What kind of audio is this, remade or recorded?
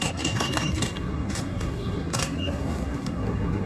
remade